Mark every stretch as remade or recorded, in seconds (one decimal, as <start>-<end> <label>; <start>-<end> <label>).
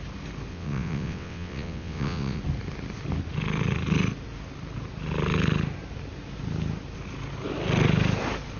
0.0-0.5 recorded; 0.5-2.4 remade; 2.4-8.6 recorded